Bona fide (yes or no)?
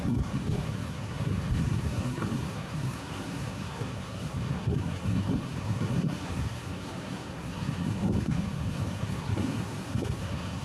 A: no